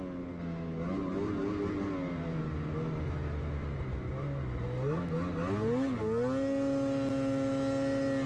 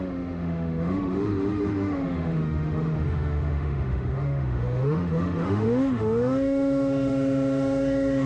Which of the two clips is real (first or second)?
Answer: first